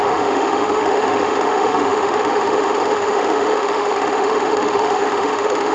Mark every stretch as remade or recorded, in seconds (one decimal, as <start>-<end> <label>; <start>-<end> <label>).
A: 0.0-5.7 remade